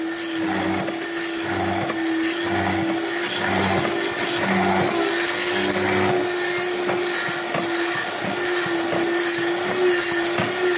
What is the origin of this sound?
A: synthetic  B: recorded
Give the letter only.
B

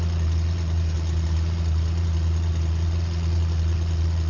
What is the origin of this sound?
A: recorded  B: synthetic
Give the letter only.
A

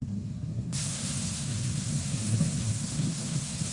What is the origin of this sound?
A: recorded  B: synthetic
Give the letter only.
B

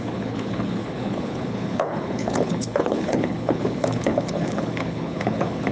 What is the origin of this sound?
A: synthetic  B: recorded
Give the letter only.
A